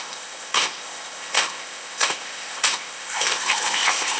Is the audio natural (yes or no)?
no